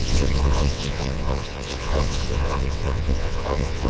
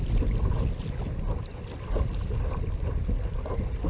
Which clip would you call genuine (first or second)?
second